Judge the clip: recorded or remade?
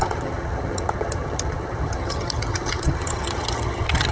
remade